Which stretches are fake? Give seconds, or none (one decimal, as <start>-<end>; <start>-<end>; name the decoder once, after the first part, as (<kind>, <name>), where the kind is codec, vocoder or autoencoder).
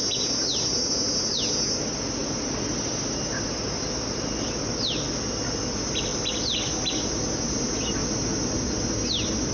none